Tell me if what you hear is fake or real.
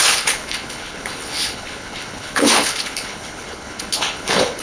fake